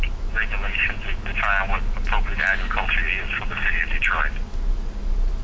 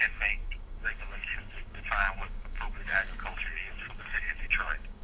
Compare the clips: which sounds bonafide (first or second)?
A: first